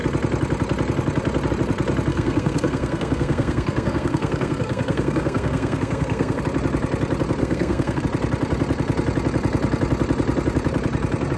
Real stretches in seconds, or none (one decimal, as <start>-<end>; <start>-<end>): 0.0-2.1; 6.4-7.4; 8.0-11.4